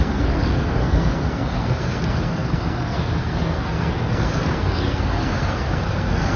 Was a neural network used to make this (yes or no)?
yes